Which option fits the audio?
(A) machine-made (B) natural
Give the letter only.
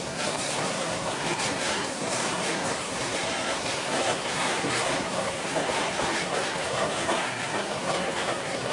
A